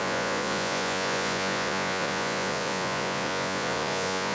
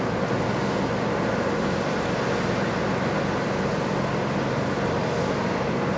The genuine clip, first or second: second